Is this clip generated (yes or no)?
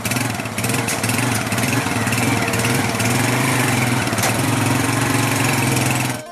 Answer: yes